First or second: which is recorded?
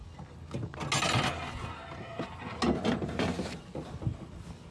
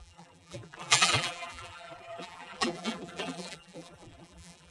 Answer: first